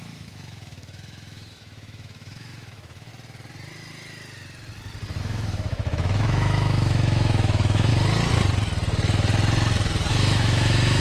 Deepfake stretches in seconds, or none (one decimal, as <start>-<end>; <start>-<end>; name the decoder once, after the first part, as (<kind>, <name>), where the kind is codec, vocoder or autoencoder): 0.0-3.1 (autoencoder, DAC-VAE); 5.2-7.9; 10.1-11.0